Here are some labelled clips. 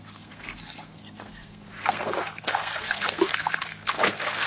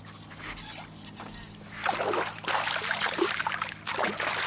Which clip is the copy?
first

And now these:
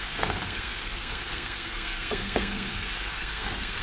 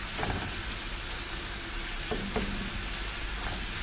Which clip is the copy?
first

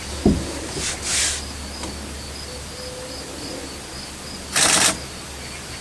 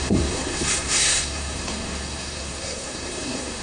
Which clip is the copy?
second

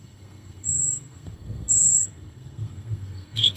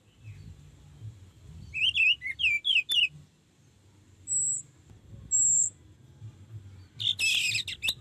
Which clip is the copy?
first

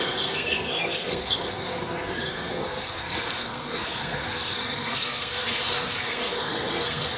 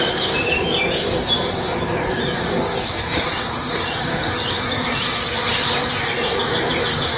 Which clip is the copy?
first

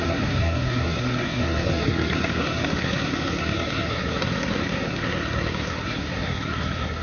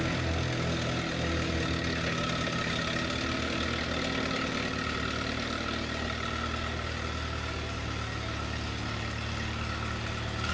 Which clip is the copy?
first